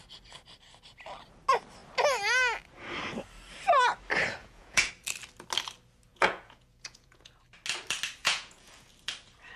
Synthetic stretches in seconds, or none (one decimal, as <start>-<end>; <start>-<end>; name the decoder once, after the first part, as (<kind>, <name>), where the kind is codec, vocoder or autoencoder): 4.4-4.9 (vocoder, Vocos); 6.1-7.3; 8.2-8.9